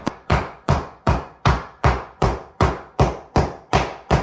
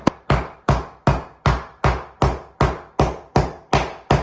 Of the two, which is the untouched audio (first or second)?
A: second